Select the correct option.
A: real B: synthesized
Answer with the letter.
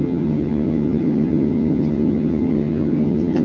B